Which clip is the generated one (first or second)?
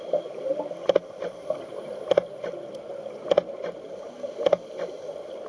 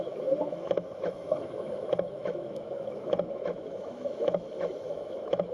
second